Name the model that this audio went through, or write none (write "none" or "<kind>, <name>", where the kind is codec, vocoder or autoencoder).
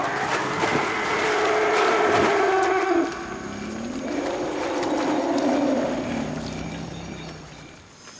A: none